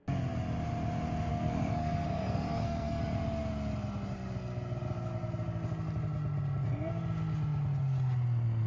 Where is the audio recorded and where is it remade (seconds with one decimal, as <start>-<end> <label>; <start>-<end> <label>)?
0.0-1.3 recorded; 1.3-3.0 remade; 3.0-8.7 recorded